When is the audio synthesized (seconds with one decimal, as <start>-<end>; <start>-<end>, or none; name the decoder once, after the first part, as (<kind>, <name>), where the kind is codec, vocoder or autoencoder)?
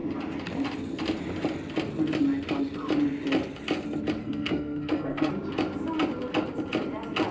4.2-5.3 (codec, SNAC)